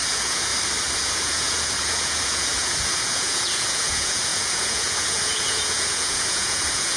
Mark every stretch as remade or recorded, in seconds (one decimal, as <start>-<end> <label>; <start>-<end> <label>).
0.0-0.5 remade; 0.5-1.0 recorded; 1.0-7.0 remade